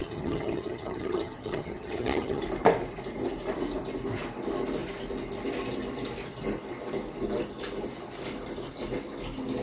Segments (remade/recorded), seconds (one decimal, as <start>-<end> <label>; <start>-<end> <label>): 0.0-2.4 remade; 2.4-9.6 recorded